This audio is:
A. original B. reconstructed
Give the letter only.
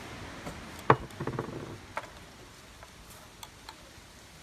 A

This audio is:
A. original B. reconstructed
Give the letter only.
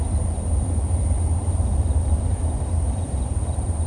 B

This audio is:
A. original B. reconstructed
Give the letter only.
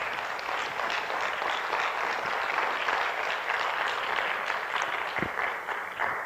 A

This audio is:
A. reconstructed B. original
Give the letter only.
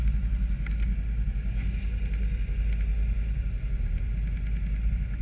B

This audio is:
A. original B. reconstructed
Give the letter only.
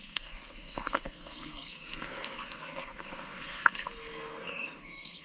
B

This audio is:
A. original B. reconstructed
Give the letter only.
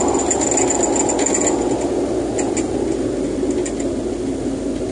A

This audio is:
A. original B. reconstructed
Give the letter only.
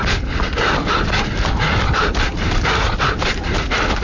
B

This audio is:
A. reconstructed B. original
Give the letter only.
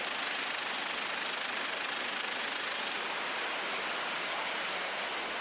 B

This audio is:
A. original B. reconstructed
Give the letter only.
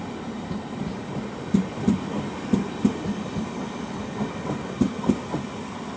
A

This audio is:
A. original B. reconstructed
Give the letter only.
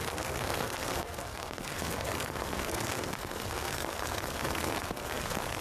B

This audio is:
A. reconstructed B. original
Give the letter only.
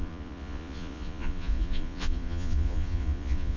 A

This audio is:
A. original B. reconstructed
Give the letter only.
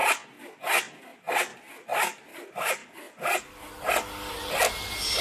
A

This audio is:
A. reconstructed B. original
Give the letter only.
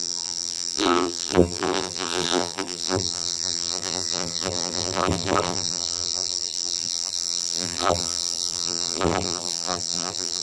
A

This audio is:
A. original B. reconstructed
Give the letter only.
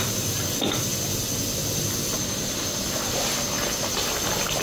A